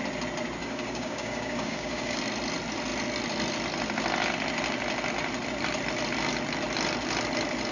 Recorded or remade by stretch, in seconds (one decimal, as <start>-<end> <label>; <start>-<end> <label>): 0.0-0.6 recorded; 0.6-2.2 remade; 2.2-7.7 recorded